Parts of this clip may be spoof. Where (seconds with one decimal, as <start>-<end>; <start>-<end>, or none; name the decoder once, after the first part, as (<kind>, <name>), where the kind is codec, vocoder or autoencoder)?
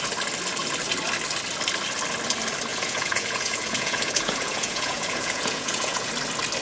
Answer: 2.7-6.1 (vocoder, Vocos)